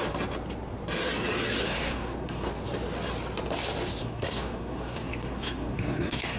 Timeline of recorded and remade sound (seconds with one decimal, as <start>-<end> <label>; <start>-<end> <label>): 0.0-1.6 recorded; 1.6-2.5 remade; 2.5-4.0 recorded; 4.0-6.4 remade

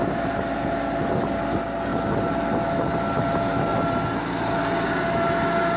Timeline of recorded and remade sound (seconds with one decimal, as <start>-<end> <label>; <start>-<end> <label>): 0.0-5.8 recorded